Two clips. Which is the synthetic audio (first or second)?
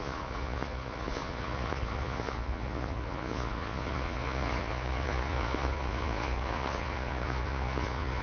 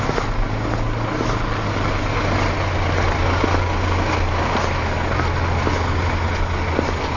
first